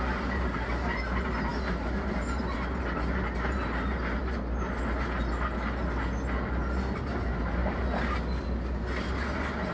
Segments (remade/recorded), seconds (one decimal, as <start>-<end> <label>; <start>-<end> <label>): 0.0-9.7 recorded